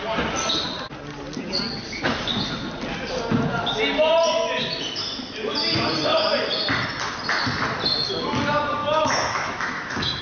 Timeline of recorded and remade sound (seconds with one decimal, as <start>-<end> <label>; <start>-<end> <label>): 0.0-8.8 recorded; 8.8-10.2 remade